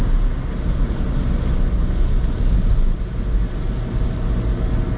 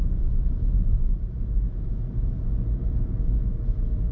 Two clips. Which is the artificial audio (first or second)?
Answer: second